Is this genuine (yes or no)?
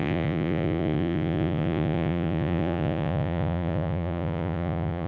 no